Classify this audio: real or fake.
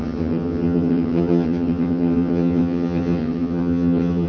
fake